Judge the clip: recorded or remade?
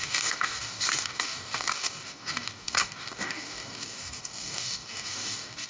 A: remade